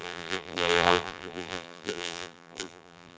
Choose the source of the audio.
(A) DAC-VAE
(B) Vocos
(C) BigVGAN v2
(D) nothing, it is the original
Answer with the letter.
C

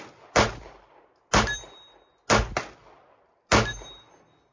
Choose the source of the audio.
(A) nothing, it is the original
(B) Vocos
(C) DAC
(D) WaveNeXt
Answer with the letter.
A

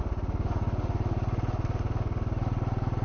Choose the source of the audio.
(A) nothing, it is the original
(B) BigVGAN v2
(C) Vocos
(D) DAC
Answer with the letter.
A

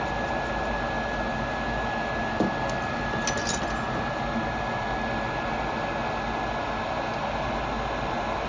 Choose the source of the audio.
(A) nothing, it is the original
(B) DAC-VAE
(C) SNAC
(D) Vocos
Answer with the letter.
A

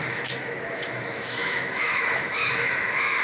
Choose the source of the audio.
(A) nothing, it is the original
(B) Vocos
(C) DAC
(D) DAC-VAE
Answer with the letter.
D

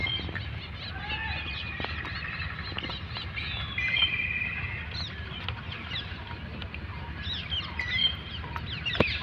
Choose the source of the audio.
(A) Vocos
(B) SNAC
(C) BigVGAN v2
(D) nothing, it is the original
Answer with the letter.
D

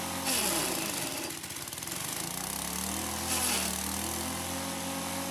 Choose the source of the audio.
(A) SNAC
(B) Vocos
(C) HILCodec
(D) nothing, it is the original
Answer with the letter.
D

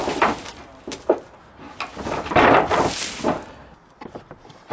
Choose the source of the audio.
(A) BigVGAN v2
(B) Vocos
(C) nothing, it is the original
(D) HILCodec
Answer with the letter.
C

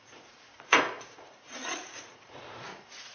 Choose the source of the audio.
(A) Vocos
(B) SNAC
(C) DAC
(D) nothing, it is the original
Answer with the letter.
A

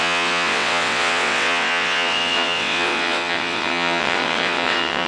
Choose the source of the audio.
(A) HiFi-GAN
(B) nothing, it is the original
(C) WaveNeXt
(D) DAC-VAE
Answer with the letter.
C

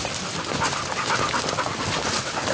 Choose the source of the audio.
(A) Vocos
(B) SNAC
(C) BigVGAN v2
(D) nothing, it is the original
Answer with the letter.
D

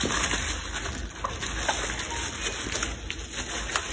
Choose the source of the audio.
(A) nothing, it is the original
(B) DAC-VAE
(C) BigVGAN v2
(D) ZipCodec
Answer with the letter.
A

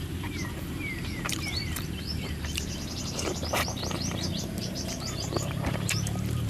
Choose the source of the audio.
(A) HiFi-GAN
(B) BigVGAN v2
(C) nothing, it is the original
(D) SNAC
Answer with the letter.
B